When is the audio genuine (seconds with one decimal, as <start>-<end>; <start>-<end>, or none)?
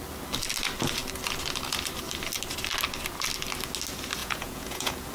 0.0-4.2